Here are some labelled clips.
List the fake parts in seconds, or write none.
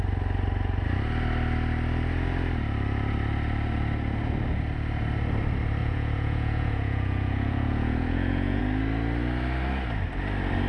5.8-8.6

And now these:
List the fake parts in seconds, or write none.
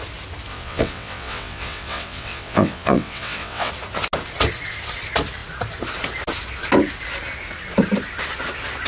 0.5-3.7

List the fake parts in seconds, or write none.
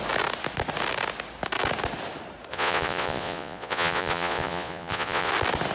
2.5-5.3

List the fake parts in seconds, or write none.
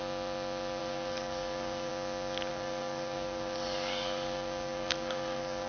0.8-1.9; 2.5-5.7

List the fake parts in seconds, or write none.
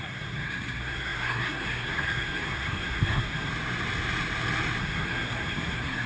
0.0-3.5; 4.8-6.1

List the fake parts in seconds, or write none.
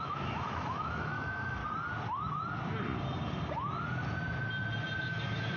0.0-1.6; 5.0-5.6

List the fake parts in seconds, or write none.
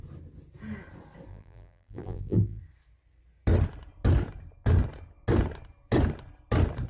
1.3-2.6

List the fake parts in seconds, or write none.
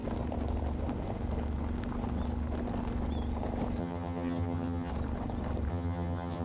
3.8-4.9; 5.7-6.4